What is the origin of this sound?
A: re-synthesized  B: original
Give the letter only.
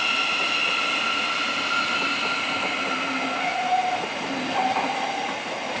B